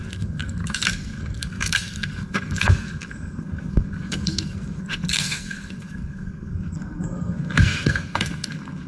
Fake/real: fake